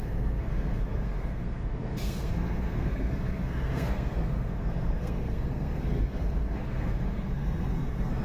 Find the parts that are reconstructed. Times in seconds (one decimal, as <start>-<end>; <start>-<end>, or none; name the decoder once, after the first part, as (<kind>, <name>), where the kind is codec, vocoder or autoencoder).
0.0-8.2 (codec, SNAC)